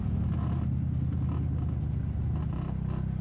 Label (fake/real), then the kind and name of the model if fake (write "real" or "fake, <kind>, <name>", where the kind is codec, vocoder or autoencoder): real